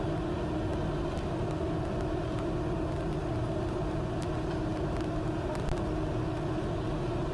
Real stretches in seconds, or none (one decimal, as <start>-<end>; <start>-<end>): 0.0-7.3